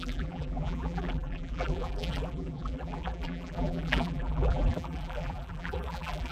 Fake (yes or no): yes